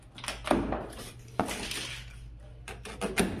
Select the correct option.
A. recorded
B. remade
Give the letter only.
A